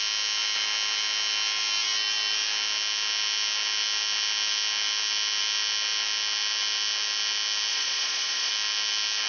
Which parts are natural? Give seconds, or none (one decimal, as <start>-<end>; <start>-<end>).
0.0-7.7; 8.5-9.3

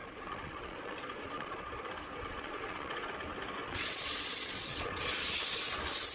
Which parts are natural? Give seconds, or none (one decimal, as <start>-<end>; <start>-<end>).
1.6-2.3; 3.1-3.6; 4.9-6.1

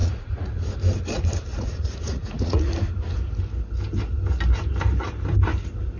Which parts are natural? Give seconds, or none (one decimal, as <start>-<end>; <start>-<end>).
0.5-1.5; 2.7-6.0

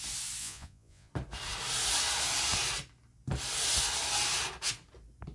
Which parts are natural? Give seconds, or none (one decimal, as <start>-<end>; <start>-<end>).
0.0-0.4; 1.1-5.3

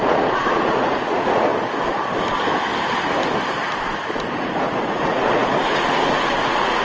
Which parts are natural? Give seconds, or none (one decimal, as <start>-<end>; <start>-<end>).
1.5-4.4